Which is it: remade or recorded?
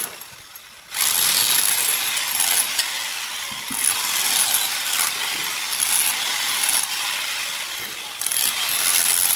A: recorded